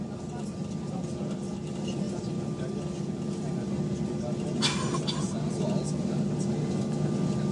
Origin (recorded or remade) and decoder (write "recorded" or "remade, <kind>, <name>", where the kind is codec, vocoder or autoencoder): recorded